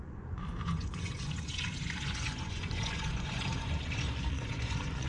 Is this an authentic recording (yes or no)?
no